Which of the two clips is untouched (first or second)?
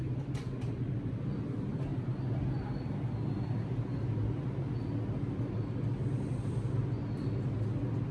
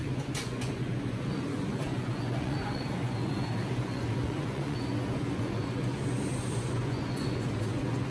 first